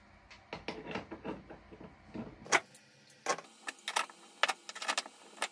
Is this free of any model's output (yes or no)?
yes